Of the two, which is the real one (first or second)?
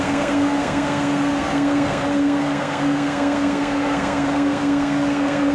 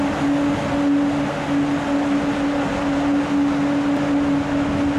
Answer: second